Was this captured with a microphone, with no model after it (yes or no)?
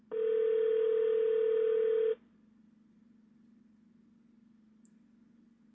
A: yes